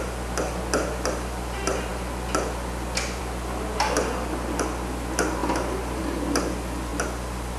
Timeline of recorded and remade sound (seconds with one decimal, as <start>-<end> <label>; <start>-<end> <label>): 0.0-7.6 recorded

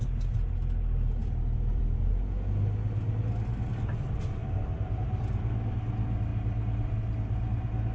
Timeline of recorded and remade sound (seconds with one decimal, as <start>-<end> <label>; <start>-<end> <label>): 0.0-1.2 recorded; 1.2-2.1 remade; 2.1-4.4 recorded; 4.4-5.0 remade; 5.0-6.3 recorded; 6.3-6.9 remade; 6.9-7.9 recorded

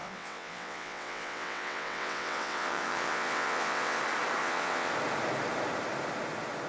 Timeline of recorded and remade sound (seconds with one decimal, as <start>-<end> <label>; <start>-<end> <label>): 0.0-4.0 remade; 4.0-4.4 recorded; 4.4-4.9 remade; 4.9-6.7 recorded